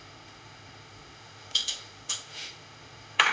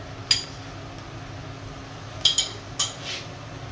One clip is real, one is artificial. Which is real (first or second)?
second